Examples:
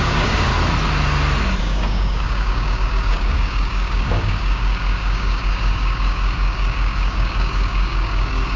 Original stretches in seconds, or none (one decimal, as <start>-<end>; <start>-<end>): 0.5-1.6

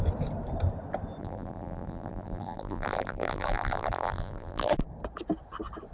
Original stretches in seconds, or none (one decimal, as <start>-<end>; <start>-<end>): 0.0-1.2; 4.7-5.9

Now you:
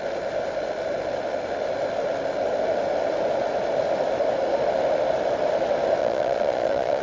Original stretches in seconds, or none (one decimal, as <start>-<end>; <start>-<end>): 0.0-6.0

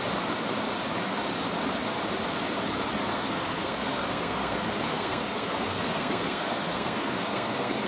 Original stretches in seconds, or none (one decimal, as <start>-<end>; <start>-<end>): 0.0-3.1